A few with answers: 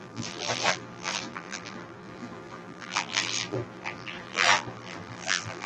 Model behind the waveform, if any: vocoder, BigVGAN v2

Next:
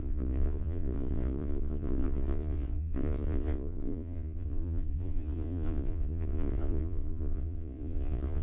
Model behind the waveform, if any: vocoder, Vocos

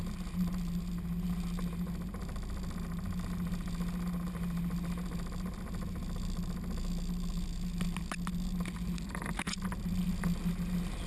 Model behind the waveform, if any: none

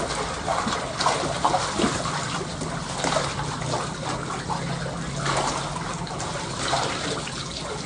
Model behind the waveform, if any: none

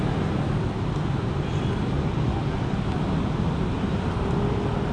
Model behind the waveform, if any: none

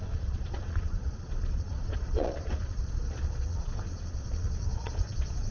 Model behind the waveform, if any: vocoder, Vocos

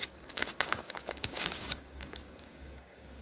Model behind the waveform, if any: codec, DAC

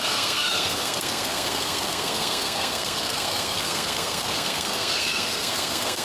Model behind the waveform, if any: codec, SNAC